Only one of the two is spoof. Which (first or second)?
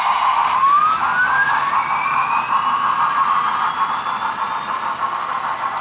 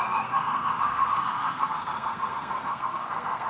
second